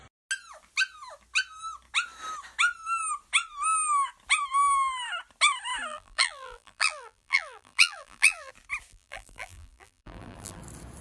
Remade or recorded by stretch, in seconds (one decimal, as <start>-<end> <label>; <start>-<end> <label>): 0.0-5.9 recorded; 5.9-8.5 remade; 8.5-8.9 recorded; 8.9-10.6 remade; 10.6-11.0 recorded